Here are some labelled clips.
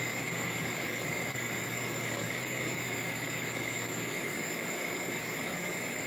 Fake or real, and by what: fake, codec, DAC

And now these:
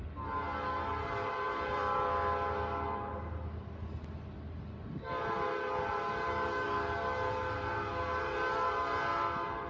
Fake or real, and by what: real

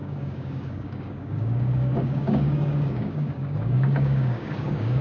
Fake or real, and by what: fake, codec, DAC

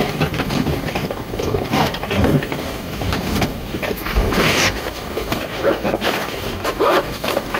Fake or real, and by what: fake, codec, DAC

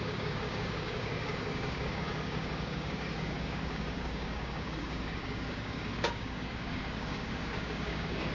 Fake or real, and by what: fake, codec, DAC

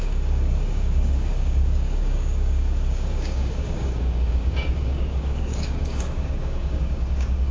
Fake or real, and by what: fake, codec, DAC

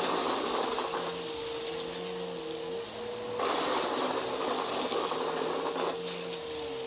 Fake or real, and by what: real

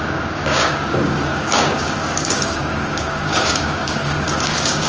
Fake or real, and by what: fake, codec, DAC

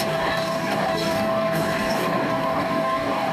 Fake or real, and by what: fake, codec, DAC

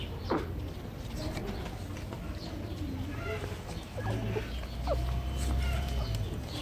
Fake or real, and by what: real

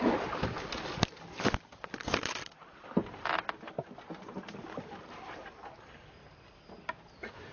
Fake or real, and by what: real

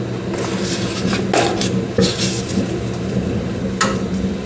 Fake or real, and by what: real